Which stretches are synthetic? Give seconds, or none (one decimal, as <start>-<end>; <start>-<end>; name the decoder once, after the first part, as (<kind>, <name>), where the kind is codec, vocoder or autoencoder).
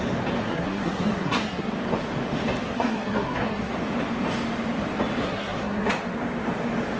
0.4-1.7 (codec, SNAC); 2.6-3.7; 5.2-5.9